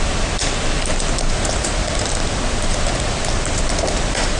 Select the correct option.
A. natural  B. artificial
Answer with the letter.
A